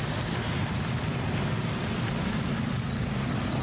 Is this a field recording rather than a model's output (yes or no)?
yes